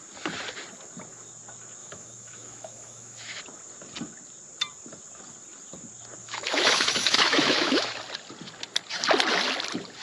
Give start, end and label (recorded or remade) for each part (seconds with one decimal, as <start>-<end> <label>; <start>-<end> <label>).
0.0-1.8 recorded; 1.8-3.4 remade; 3.4-6.2 recorded; 6.2-8.0 remade; 8.0-10.0 recorded